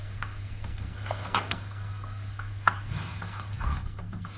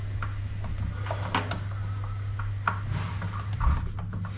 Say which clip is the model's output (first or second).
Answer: first